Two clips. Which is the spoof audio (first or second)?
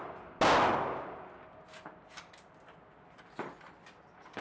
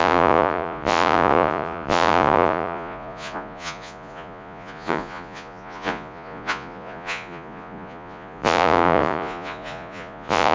second